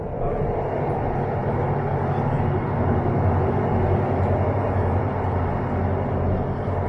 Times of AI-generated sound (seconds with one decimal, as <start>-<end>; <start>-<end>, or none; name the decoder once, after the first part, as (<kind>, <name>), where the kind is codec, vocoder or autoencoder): none